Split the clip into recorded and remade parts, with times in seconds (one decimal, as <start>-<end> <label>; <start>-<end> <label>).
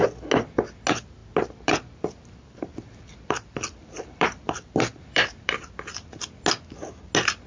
0.0-1.2 recorded; 1.2-5.7 remade; 5.7-7.5 recorded